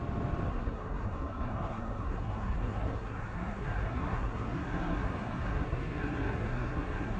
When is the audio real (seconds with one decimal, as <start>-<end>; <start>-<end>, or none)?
0.0-0.5